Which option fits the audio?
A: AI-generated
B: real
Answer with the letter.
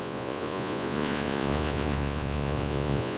A